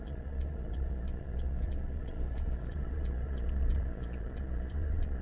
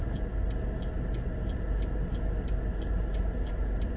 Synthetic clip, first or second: first